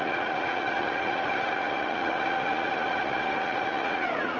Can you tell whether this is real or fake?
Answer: fake